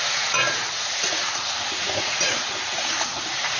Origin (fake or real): fake